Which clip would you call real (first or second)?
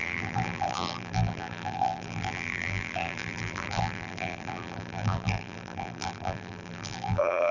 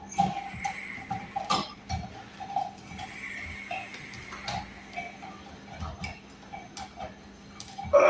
second